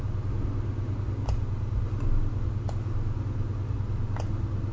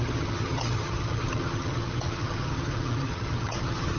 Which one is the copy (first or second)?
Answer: second